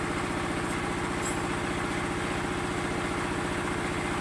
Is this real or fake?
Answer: real